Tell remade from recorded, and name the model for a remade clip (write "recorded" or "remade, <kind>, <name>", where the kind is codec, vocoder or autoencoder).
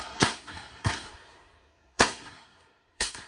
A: remade, codec, SNAC